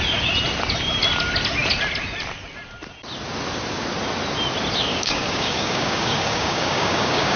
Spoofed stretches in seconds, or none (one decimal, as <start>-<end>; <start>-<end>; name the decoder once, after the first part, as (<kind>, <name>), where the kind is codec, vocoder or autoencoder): 4.9-7.4 (codec, DAC)